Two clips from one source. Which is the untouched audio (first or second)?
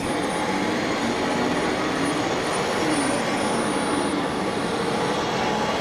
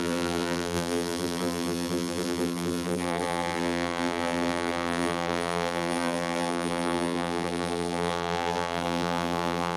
first